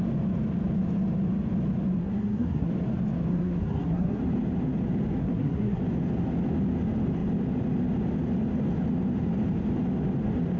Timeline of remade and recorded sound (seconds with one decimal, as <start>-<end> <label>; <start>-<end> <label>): 0.0-2.0 recorded; 2.0-2.7 remade; 2.7-3.3 recorded; 3.3-4.2 remade; 4.2-5.2 recorded; 5.2-5.8 remade; 5.8-10.6 recorded